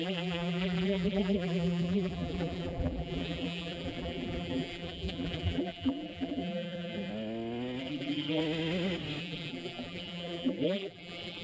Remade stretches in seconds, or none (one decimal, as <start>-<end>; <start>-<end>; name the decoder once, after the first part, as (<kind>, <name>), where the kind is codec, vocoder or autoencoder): 0.0-7.1 (vocoder, BigVGAN v2); 7.8-8.4; 9.2-11.4